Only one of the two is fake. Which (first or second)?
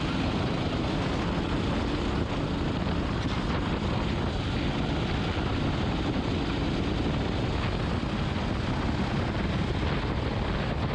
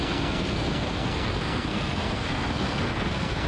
second